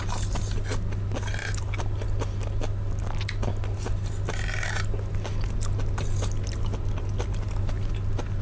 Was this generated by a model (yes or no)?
no